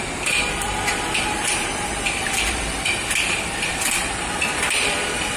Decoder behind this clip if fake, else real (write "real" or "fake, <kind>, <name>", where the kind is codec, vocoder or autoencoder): fake, vocoder, BigVGAN v2